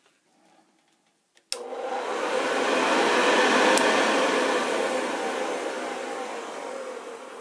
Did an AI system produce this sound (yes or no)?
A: no